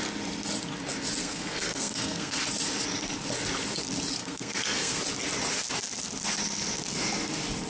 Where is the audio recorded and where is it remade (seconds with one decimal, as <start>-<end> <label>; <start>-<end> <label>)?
0.0-1.2 recorded; 1.2-2.4 remade; 2.4-4.2 recorded; 4.2-5.0 remade; 5.0-7.7 recorded